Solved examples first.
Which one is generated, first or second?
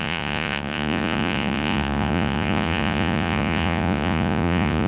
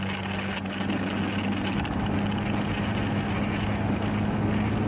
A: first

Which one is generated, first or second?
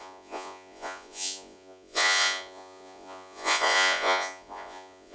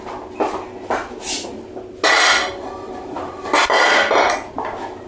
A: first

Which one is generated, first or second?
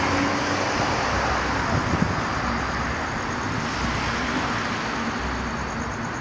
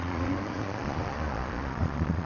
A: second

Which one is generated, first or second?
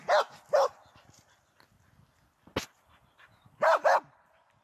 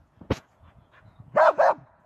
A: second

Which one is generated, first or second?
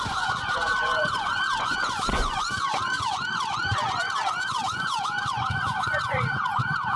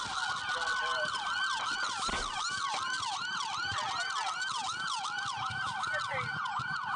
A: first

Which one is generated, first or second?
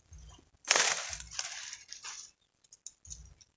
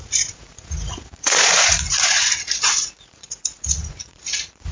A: second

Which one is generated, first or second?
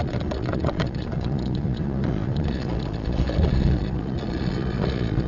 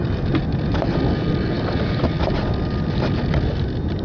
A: first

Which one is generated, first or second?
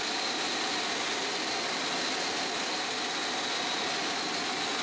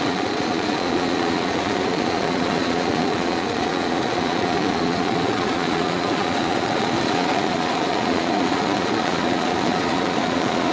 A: second